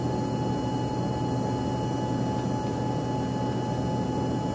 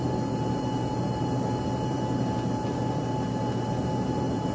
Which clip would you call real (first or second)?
first